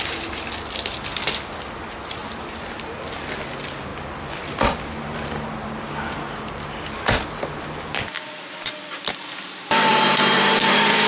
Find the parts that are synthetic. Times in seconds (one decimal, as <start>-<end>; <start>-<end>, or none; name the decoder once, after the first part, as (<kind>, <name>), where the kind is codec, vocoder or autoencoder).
3.9-7.0 (vocoder, BigVGAN v2); 9.9-11.1

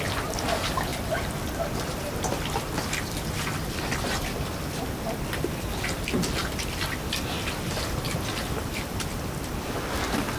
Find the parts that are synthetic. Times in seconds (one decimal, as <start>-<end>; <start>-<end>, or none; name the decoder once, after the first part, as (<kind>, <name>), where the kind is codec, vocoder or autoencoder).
0.9-5.7 (vocoder, BigVGAN v2); 6.4-9.0

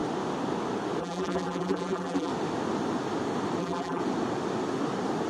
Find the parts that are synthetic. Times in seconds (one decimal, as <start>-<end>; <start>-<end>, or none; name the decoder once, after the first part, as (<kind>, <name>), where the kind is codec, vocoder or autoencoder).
1.0-2.3 (vocoder, BigVGAN v2); 3.6-4.0

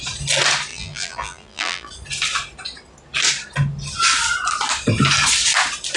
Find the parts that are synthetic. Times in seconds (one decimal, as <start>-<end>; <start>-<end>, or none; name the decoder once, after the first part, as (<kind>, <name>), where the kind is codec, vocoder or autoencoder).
0.7-1.9 (vocoder, BigVGAN v2)

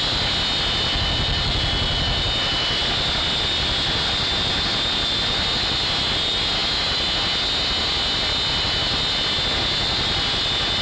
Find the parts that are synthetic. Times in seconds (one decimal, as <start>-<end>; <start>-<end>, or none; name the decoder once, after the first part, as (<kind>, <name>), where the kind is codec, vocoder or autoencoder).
none

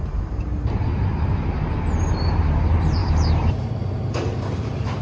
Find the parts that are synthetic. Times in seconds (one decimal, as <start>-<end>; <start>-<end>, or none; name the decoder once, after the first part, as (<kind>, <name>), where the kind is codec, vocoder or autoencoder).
0.0-5.0 (vocoder, BigVGAN v2)

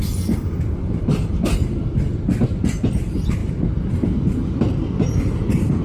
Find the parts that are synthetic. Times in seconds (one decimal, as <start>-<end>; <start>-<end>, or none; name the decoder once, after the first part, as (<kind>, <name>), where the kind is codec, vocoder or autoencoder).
0.0-1.6 (vocoder, BigVGAN v2); 2.1-3.4

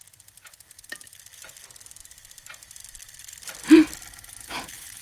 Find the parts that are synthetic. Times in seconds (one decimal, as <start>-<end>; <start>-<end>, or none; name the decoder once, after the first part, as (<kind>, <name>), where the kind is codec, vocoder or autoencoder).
2.0-5.0 (vocoder, BigVGAN v2)